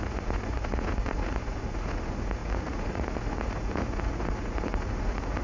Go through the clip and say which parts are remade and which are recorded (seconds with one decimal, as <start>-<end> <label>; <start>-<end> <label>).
0.0-5.4 remade